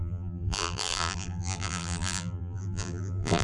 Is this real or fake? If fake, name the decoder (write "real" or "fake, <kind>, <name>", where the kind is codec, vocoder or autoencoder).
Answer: fake, vocoder, BigVGAN v2